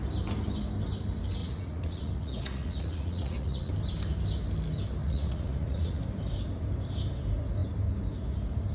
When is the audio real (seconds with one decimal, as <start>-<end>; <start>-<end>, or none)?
0.0-1.4; 3.7-5.0; 6.0-8.7